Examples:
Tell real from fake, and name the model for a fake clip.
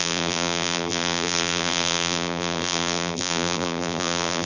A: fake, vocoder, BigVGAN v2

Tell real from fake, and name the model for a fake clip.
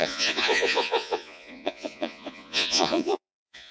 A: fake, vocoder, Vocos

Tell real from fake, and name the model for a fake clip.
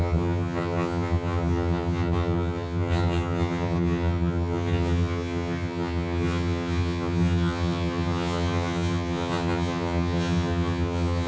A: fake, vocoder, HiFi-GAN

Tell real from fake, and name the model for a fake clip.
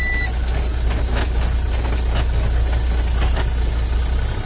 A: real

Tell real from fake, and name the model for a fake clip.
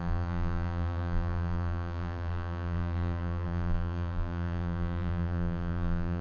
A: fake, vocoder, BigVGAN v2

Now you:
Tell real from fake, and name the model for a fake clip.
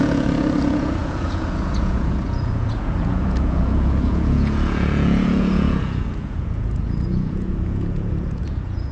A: fake, vocoder, Vocos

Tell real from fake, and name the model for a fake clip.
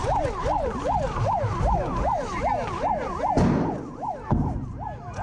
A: real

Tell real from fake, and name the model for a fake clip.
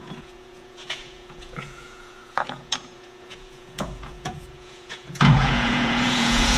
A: fake, vocoder, Vocos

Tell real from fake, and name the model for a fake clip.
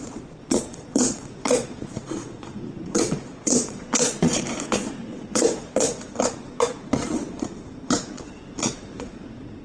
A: fake, vocoder, Vocos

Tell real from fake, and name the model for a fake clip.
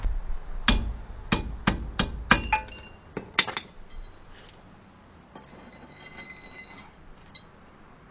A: real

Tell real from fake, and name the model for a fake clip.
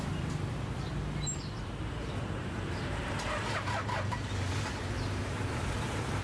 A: fake, vocoder, BigVGAN v2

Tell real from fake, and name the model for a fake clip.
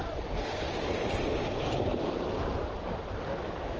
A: real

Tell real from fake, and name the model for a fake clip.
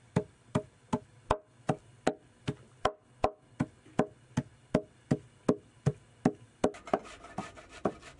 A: real